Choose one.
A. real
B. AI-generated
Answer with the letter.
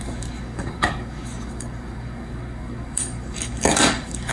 B